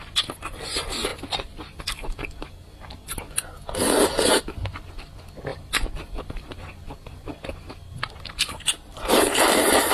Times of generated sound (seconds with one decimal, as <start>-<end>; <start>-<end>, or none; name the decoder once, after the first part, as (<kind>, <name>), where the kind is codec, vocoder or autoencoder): 1.1-2.9 (vocoder, BigVGAN v2); 5.5-9.9